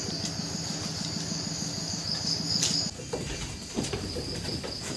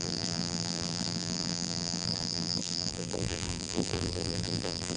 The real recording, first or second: first